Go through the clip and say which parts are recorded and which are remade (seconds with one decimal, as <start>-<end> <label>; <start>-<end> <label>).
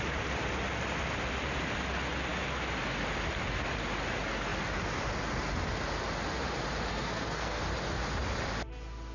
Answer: 0.0-6.9 recorded; 6.9-7.6 remade; 7.6-9.1 recorded